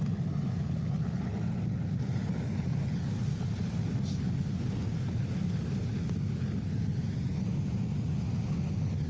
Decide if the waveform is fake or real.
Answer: real